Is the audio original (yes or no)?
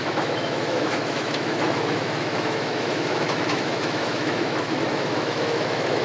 no